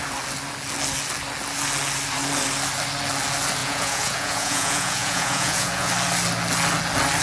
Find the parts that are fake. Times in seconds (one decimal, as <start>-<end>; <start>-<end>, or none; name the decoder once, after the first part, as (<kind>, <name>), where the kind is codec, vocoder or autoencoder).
3.6-5.9 (vocoder, Vocos)